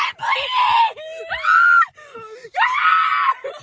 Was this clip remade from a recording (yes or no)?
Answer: no